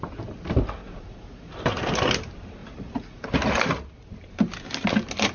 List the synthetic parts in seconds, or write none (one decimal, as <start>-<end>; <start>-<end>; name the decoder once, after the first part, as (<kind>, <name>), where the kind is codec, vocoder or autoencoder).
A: 0.8-1.5 (vocoder, Vocos); 2.6-3.3